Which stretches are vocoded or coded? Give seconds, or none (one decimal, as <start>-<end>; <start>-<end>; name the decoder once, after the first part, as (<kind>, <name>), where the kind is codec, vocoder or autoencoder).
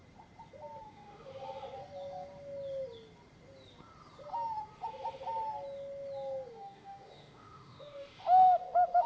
0.8-1.3 (autoencoder, DAC-VAE); 6.5-9.1